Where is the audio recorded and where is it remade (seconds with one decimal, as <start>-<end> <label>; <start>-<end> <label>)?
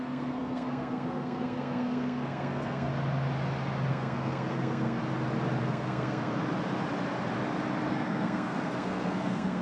0.0-2.9 remade; 2.9-3.9 recorded; 3.9-5.0 remade; 5.0-5.6 recorded; 5.6-6.4 remade; 6.4-7.9 recorded; 7.9-9.6 remade